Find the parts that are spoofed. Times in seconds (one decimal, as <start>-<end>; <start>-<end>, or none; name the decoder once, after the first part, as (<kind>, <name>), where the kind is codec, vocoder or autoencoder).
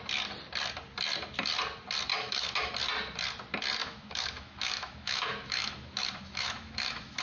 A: 2.1-2.7 (autoencoder, DAC-VAE); 3.8-7.2